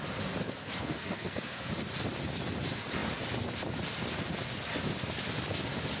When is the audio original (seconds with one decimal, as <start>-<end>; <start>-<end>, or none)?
0.0-0.4; 1.7-6.0